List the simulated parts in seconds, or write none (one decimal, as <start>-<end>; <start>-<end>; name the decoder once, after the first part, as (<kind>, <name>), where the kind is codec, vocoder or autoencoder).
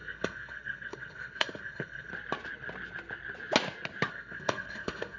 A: 0.0-2.1 (codec, SNAC); 4.1-5.2